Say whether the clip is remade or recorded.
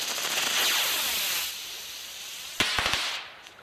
recorded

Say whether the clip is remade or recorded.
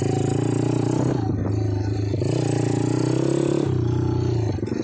recorded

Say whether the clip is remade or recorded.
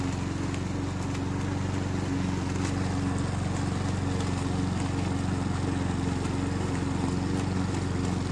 recorded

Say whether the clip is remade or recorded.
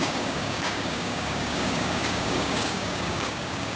remade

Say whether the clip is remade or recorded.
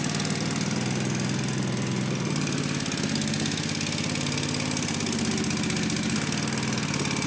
recorded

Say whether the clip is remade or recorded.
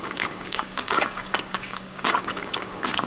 remade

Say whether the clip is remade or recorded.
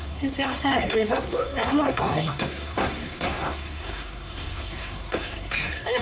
remade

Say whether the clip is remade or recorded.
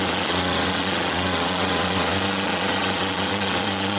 remade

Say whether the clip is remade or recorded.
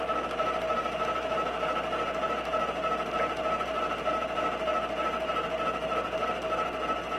recorded